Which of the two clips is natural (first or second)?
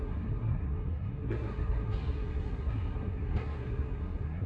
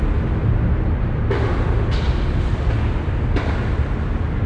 second